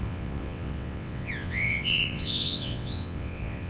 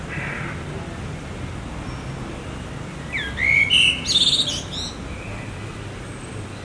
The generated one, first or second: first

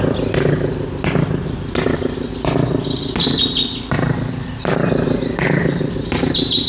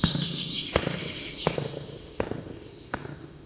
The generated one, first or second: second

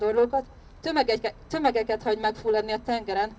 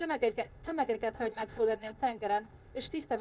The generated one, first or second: second